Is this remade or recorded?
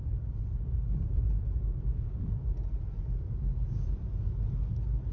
recorded